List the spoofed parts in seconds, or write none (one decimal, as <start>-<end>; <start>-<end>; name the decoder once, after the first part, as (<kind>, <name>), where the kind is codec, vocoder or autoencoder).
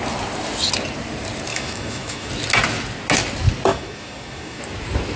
1.5-2.3 (autoencoder, DAC-VAE); 3.7-4.6